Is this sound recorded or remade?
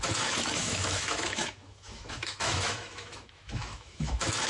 remade